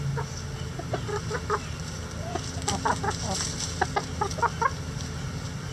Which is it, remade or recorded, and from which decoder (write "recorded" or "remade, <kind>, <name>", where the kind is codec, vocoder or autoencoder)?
recorded